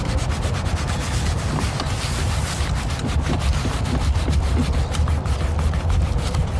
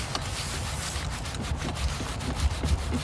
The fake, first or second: first